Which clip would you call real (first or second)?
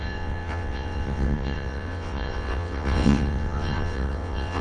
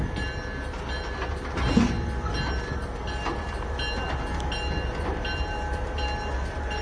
second